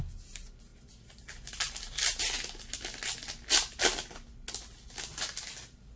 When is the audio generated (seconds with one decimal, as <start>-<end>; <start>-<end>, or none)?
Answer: none